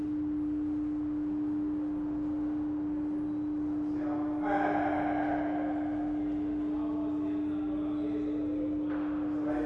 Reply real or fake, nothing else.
real